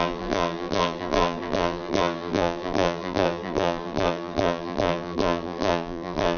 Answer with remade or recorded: remade